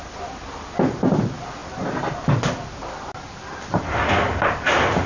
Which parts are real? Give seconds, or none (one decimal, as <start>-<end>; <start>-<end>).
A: 0.0-5.1